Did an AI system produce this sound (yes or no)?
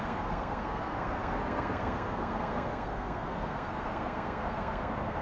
yes